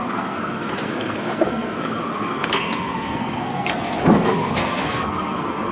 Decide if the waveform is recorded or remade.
remade